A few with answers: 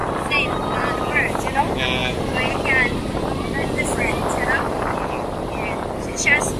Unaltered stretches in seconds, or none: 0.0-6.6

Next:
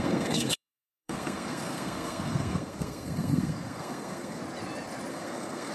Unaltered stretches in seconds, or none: 4.4-5.1